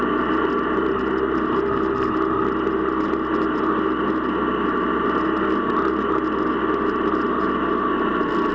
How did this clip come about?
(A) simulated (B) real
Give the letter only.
B